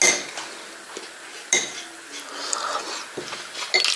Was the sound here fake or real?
real